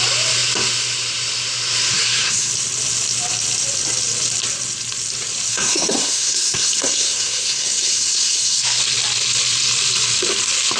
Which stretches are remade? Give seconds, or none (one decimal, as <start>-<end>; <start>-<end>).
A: 1.9-2.5; 5.5-8.8